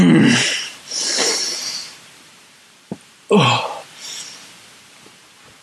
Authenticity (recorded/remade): remade